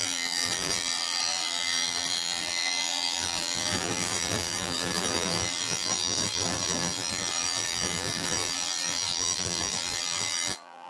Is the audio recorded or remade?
remade